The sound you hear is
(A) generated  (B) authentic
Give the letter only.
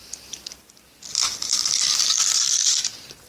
B